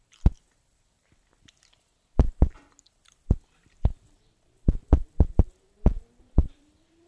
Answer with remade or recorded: remade